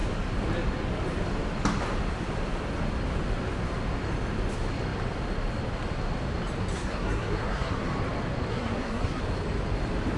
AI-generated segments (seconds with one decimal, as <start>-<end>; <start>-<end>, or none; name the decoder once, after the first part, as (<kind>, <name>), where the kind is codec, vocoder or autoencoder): 6.7-7.8 (codec, SNAC); 8.5-9.2